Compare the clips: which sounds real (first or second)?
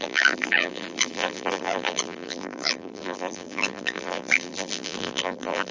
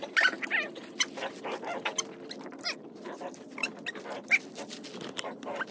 second